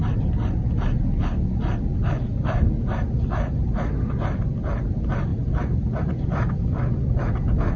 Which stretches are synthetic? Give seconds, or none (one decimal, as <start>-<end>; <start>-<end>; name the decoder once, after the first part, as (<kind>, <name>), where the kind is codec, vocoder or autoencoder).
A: none